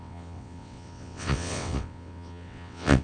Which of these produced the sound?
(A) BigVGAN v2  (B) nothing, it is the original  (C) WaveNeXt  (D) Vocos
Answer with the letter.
C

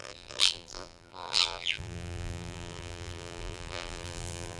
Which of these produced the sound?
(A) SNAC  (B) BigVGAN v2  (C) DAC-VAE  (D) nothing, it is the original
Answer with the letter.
B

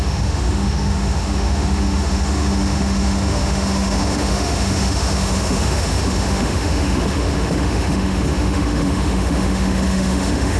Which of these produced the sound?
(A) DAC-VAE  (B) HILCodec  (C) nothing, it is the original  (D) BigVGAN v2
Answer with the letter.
A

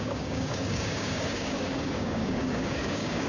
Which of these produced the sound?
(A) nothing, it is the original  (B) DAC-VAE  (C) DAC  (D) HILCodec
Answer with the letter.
C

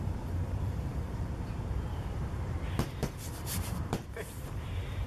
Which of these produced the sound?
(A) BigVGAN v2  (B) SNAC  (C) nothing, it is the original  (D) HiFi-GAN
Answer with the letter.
A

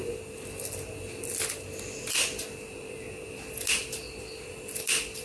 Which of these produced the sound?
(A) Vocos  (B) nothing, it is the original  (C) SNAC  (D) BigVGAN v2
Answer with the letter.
B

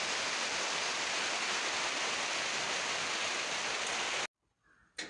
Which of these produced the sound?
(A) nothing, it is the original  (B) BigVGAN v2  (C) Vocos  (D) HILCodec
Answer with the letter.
A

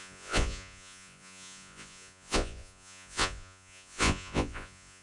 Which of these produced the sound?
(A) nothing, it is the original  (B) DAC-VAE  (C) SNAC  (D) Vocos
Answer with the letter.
D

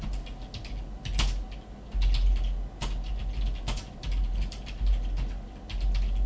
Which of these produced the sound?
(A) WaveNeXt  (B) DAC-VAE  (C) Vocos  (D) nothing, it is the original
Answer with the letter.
D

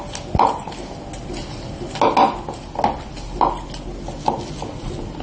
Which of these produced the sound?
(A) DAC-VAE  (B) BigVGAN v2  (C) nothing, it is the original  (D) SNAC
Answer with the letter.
C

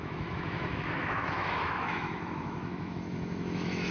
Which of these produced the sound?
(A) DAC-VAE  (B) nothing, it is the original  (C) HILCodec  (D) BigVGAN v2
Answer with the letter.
A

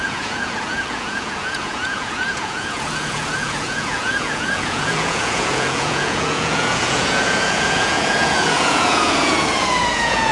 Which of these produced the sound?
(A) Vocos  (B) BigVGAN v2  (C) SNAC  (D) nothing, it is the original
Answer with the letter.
A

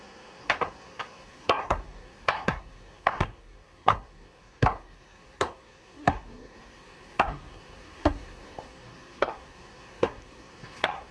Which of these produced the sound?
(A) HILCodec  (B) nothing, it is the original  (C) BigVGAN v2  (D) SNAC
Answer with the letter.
D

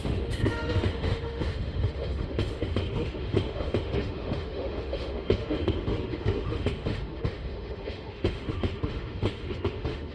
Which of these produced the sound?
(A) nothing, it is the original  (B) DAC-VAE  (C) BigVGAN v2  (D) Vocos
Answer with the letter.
B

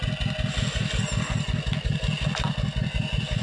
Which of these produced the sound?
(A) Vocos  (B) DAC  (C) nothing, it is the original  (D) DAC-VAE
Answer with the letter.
C